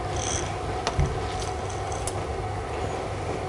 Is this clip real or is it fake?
real